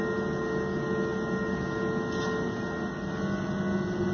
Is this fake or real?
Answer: real